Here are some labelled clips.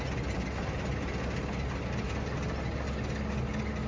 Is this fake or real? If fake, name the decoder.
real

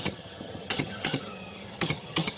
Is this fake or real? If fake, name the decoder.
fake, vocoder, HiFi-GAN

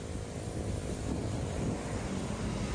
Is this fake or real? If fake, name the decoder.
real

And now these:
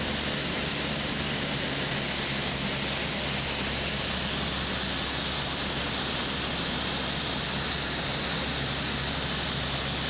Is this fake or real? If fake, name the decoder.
real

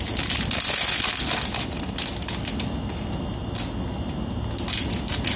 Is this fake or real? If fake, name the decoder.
real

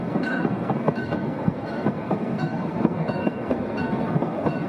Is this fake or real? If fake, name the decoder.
fake, codec, SNAC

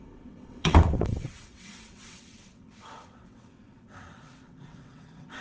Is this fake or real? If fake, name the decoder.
fake, vocoder, WaveNeXt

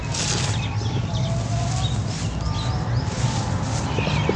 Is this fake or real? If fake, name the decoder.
real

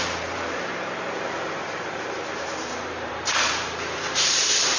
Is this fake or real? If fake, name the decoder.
fake, vocoder, BigVGAN v2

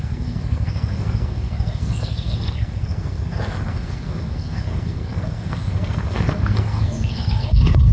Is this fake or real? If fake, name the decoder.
fake, codec, SNAC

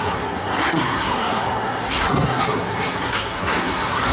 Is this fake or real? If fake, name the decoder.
fake, codec, SNAC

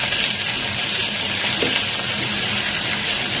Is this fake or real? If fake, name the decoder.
real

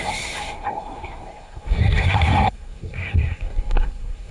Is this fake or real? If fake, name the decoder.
fake, codec, SNAC